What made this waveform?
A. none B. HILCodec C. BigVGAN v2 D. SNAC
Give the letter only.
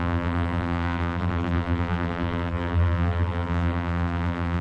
C